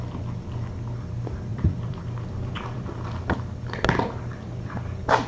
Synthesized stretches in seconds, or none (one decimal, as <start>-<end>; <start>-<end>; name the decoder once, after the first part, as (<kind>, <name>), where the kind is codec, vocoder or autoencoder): 1.5-3.2 (vocoder, BigVGAN v2)